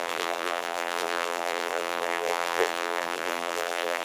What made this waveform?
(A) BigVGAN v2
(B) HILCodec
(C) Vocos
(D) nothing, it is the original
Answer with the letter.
A